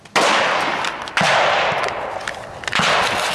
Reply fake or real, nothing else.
real